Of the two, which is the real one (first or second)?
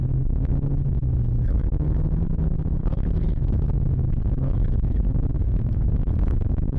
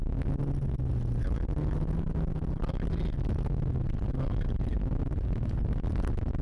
second